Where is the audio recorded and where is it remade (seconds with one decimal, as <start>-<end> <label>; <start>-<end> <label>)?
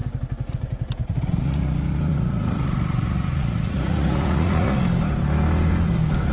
0.0-1.0 recorded; 1.0-4.8 remade; 4.8-6.3 recorded